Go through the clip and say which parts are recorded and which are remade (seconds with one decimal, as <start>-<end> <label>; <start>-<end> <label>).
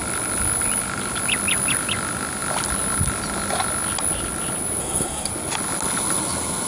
0.0-4.8 recorded; 4.8-5.3 remade; 5.3-6.7 recorded